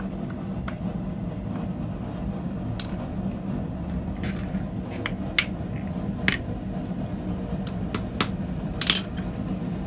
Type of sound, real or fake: real